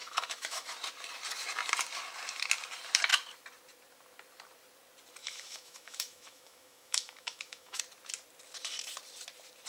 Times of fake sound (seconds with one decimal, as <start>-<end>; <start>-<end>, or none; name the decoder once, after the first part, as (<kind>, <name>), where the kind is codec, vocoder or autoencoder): 0.0-0.7 (autoencoder, DAC-VAE); 5.2-7.8

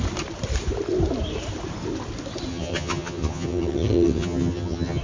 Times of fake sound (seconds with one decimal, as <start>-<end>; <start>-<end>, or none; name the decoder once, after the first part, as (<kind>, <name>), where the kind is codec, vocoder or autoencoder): 2.5-5.0 (vocoder, HiFi-GAN)

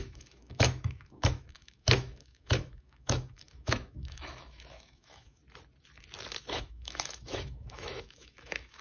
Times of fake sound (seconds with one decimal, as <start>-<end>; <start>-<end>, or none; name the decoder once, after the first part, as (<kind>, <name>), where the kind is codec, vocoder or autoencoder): 0.0-5.4 (autoencoder, DAC-VAE); 6.4-8.8

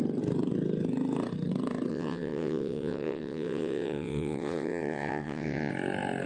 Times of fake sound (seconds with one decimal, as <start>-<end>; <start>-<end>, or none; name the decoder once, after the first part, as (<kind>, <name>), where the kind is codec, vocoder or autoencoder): 1.9-5.7 (vocoder, WaveNeXt)

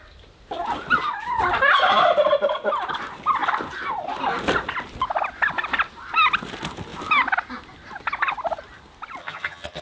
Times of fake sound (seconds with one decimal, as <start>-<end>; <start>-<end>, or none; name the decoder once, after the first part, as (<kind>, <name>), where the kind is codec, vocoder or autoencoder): 9.2-9.8 (vocoder, HiFi-GAN)

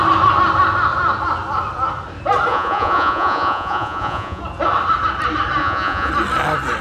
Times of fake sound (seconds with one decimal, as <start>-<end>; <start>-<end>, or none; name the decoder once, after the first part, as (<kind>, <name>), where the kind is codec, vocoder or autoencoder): 2.5-4.4 (vocoder, Vocos); 5.6-6.1

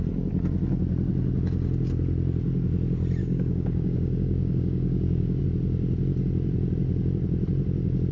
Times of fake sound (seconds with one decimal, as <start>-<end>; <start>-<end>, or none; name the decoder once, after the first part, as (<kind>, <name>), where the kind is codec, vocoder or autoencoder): 3.2-5.4 (codec, DAC)

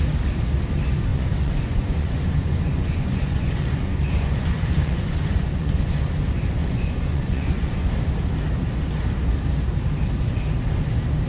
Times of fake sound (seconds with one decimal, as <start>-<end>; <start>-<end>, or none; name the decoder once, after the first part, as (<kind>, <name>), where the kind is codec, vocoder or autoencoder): 1.1-6.0 (vocoder, Vocos); 6.6-7.9